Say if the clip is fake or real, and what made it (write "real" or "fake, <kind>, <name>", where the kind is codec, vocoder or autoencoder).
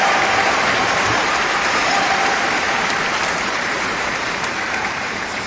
fake, vocoder, BigVGAN v2